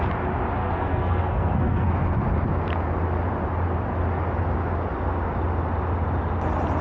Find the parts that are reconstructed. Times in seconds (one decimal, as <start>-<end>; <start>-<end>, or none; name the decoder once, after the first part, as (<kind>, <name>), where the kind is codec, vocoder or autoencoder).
0.6-1.9 (codec, SNAC)